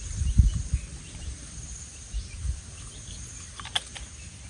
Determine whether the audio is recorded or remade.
recorded